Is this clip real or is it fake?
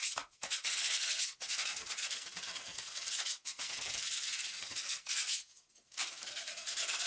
fake